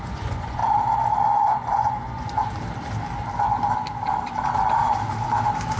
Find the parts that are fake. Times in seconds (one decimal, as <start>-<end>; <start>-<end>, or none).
0.0-0.6; 1.3-2.4